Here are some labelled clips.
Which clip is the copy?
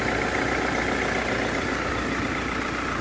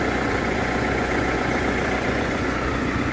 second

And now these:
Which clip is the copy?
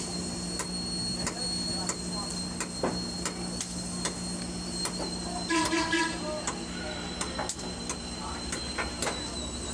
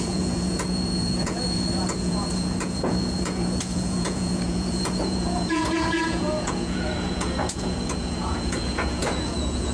second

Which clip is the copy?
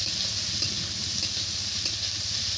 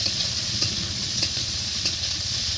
second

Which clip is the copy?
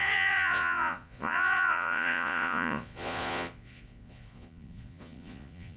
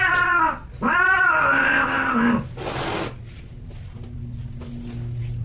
first